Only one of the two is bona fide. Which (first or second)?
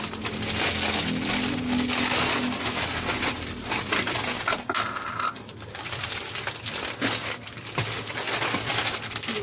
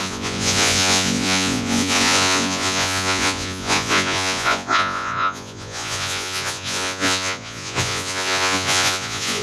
first